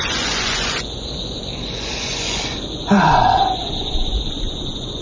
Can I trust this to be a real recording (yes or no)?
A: no